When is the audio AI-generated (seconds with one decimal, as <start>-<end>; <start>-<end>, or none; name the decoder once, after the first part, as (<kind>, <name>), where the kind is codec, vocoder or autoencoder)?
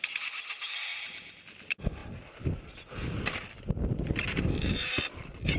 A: none